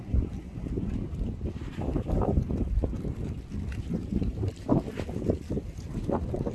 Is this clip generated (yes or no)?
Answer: yes